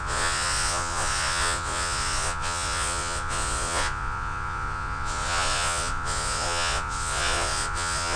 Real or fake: fake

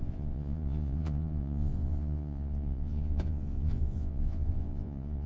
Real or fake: fake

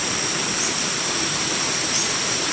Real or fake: real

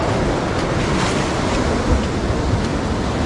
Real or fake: real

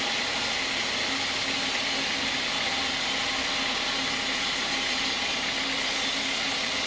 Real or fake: real